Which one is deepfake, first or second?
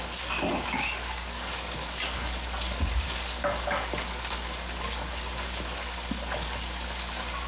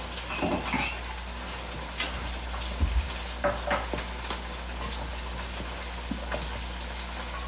first